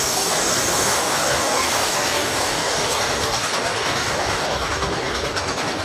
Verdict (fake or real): fake